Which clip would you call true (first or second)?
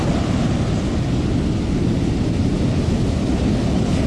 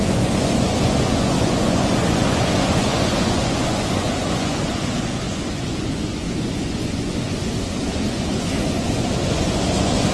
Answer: first